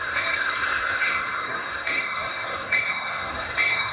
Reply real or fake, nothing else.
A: fake